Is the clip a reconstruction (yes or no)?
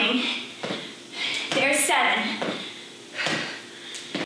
no